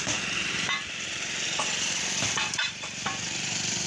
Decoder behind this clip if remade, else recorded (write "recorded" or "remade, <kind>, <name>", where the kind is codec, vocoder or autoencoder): remade, vocoder, BigVGAN v2